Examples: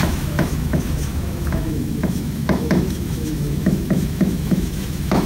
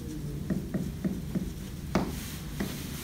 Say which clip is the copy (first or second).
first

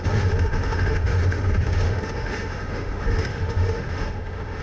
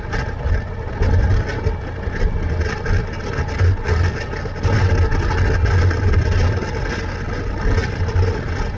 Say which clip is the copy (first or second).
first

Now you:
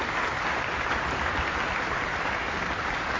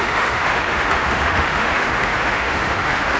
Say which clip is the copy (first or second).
second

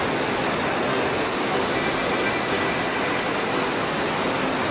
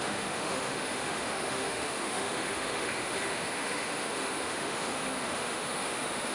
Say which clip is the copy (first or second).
second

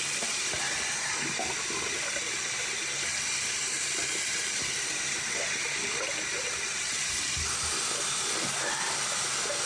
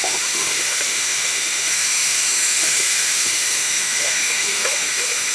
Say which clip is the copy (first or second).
second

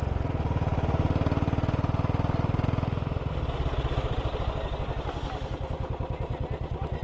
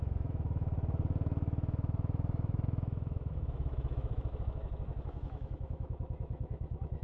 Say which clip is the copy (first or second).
second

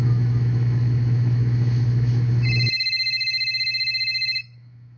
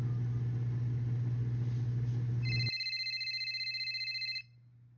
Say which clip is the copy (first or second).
first